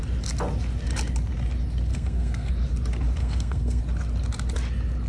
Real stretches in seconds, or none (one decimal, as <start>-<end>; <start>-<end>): 0.0-1.9; 2.5-3.2; 3.8-5.1